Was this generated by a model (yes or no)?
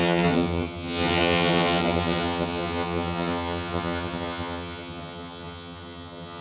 yes